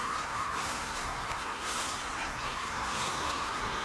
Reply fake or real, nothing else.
fake